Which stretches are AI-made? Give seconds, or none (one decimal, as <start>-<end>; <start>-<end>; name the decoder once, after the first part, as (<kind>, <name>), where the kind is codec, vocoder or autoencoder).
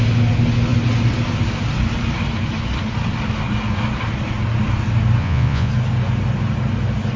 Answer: 5.2-5.7 (vocoder, Vocos)